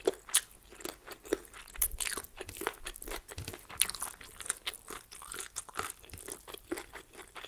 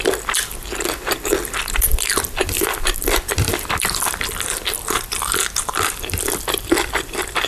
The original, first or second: first